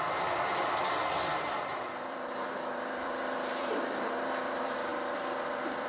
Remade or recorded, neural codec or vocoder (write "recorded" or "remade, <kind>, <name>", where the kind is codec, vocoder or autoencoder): remade, vocoder, BigVGAN v2